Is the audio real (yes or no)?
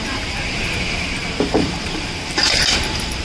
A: no